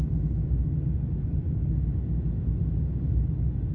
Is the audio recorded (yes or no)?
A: yes